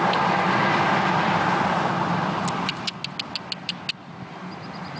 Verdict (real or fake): real